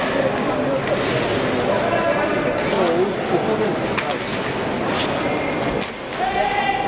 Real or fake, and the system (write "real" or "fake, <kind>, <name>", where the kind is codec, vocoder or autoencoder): real